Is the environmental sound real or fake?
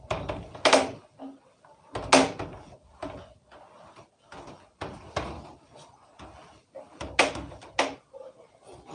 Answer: real